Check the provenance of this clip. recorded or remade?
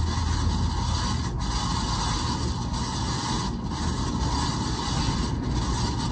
recorded